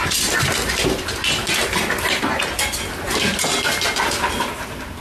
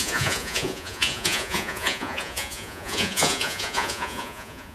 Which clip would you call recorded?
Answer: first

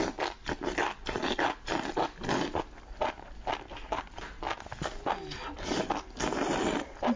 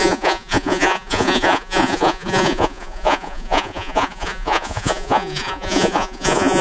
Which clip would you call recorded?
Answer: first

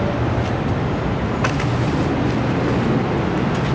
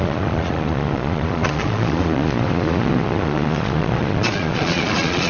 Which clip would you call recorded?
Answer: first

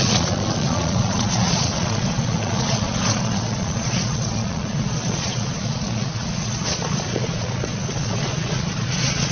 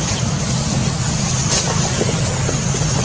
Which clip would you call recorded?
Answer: second